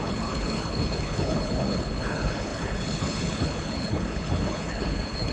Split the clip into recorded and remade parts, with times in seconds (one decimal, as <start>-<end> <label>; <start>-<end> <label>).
0.0-5.3 remade